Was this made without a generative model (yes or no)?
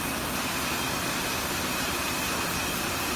yes